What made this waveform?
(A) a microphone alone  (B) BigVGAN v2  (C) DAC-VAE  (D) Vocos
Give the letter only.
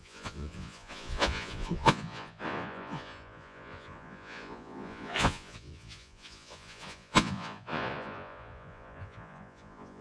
D